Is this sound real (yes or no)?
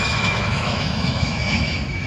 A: no